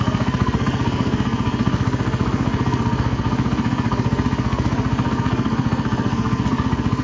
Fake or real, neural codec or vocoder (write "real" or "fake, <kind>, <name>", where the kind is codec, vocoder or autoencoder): fake, codec, SNAC